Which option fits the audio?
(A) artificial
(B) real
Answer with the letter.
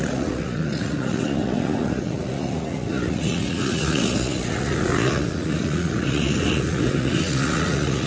A